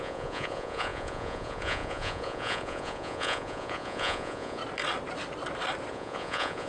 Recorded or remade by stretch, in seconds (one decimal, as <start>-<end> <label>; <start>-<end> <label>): 0.0-4.6 remade; 4.6-5.9 recorded; 5.9-6.7 remade